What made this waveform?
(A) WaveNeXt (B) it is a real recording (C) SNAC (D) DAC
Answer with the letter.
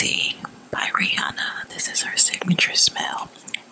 A